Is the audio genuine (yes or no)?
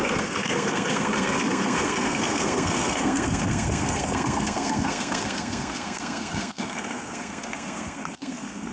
no